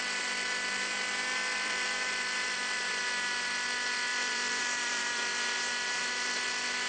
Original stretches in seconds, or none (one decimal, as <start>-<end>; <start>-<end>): 0.0-1.5; 2.9-4.1; 5.2-6.9

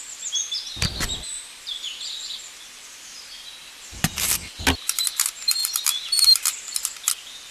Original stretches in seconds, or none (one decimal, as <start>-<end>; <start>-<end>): none

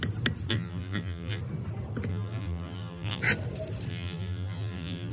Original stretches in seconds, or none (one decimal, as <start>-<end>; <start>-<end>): 0.0-0.5; 1.4-2.1; 3.2-3.9

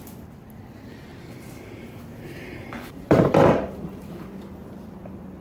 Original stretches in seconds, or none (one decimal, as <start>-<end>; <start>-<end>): 0.0-1.1; 4.3-5.4

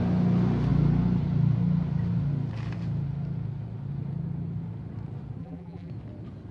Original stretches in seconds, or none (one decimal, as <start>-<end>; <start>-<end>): 0.0-5.4; 5.9-6.5

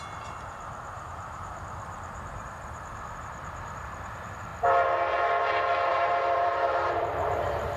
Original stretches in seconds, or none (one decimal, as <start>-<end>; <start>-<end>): 4.5-5.9